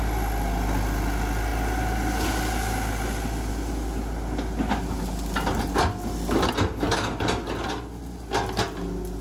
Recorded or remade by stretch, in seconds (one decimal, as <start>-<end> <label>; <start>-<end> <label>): 0.0-9.2 recorded